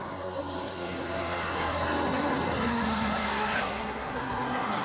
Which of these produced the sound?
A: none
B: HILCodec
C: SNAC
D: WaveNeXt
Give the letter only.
C